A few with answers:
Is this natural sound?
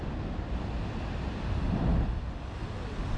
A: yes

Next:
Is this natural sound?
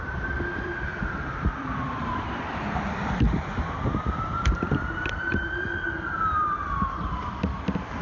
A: no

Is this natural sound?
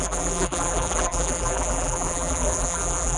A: no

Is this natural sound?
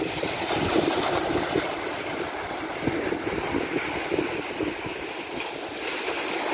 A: yes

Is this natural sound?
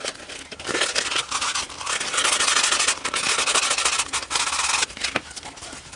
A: yes